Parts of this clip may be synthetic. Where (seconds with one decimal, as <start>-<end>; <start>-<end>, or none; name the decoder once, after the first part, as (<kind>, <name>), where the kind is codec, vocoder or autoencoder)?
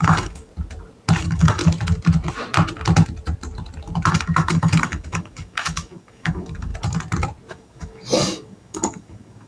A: 0.0-0.5 (codec, DAC); 1.2-1.6; 4.1-6.7; 7.5-9.5